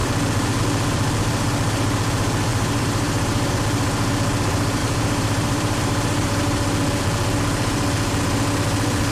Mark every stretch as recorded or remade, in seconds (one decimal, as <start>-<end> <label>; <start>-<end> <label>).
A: 0.0-2.5 recorded; 2.5-3.5 remade; 3.5-4.8 recorded; 4.8-6.4 remade; 6.4-9.1 recorded